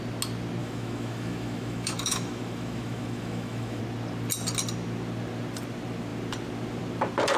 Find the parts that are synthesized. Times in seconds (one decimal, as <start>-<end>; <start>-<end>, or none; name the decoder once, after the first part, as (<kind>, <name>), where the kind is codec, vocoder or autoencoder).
0.6-3.8 (autoencoder, DAC-VAE)